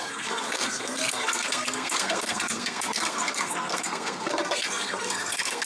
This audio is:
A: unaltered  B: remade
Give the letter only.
B